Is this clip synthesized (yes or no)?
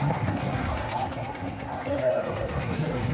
yes